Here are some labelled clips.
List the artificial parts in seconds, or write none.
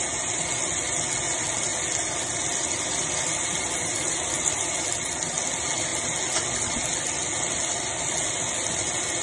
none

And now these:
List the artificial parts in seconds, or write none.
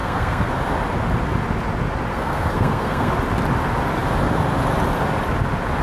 0.0-0.5 (codec, SNAC); 2.1-3.1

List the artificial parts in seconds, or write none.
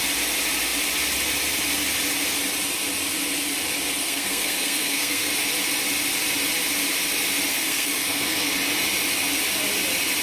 4.0-5.3 (codec, SNAC); 7.5-8.5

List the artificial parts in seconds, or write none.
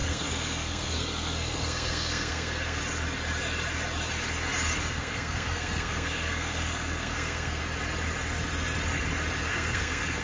0.0-2.8 (codec, SNAC); 4.9-7.6; 9.5-10.2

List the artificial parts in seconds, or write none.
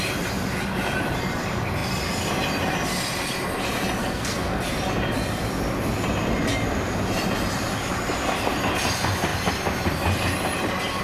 4.0-4.6 (codec, SNAC)